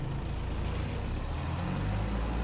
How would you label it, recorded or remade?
recorded